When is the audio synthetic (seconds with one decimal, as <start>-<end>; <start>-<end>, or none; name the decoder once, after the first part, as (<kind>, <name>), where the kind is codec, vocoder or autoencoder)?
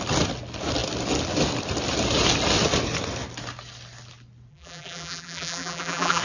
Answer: 4.5-6.2 (vocoder, BigVGAN v2)